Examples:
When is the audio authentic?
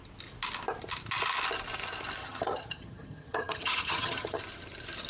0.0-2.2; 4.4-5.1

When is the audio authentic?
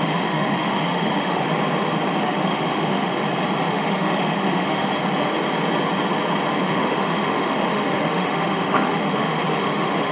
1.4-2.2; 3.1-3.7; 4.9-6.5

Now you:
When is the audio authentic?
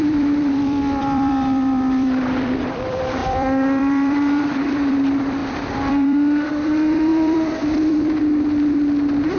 none